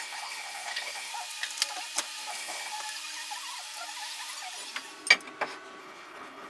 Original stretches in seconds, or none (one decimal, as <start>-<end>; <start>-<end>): 1.1-2.3; 2.7-5.8